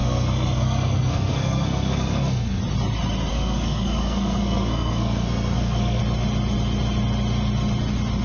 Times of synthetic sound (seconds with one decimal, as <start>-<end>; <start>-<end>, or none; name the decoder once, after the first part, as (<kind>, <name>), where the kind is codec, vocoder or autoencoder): 0.0-2.6 (codec, SNAC); 3.3-6.0